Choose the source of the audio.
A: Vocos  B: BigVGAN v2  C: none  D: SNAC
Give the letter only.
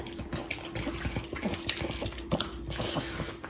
C